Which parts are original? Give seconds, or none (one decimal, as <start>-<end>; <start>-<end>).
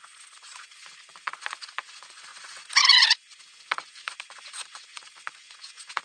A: none